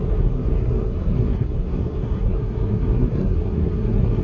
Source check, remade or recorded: remade